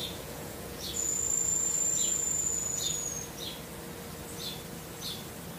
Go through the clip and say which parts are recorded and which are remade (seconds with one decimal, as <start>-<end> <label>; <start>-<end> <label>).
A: 0.0-0.9 remade; 0.9-1.5 recorded; 1.5-3.1 remade; 3.1-5.6 recorded